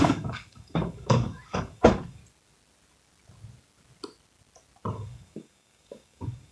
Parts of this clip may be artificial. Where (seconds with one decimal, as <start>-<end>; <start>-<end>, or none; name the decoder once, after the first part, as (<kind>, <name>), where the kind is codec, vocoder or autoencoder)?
0.0-2.2 (codec, DAC); 4.9-6.5